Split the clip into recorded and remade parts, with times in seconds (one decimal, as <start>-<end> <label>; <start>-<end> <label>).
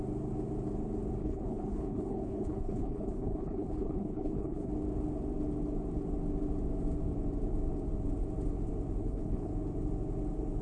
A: 0.0-1.2 recorded; 1.2-4.7 remade; 4.7-9.0 recorded; 9.0-9.5 remade; 9.5-10.6 recorded